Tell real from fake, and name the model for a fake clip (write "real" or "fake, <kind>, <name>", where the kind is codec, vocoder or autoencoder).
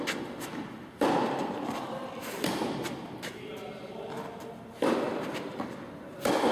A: real